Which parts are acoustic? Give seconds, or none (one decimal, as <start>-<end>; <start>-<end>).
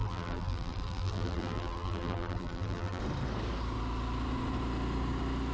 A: 3.0-5.5